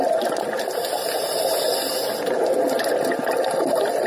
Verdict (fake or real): real